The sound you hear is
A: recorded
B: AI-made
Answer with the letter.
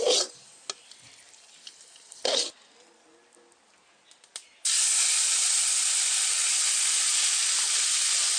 A